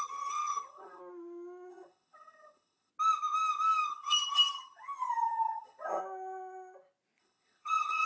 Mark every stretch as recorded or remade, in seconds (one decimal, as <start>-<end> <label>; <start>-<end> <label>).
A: 0.0-1.0 remade; 1.0-1.7 recorded; 1.7-2.9 remade; 2.9-3.9 recorded; 3.9-6.0 remade; 6.0-7.2 recorded; 7.2-8.1 remade